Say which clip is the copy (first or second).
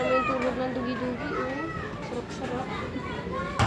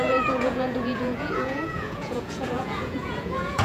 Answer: second